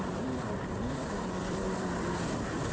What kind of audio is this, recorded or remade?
remade